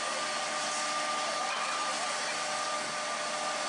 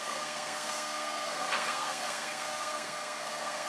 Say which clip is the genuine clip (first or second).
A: first